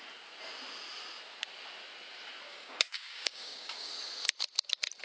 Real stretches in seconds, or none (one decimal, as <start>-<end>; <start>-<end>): 0.0-2.5; 3.9-5.0